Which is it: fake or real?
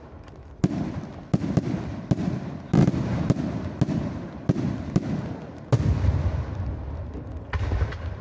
real